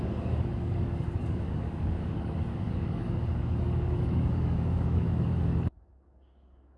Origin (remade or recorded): remade